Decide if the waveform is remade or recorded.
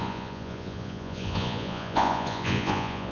remade